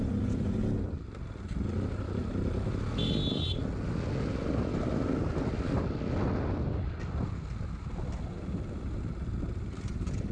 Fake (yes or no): no